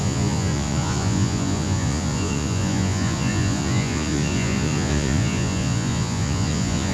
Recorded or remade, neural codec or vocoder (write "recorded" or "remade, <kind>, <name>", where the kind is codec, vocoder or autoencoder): remade, vocoder, Vocos